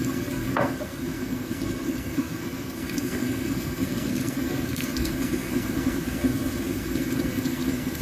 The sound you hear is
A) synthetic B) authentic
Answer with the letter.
A